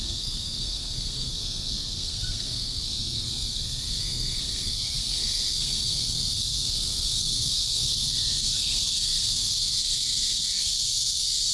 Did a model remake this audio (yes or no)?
yes